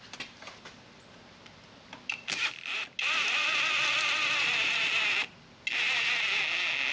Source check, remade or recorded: recorded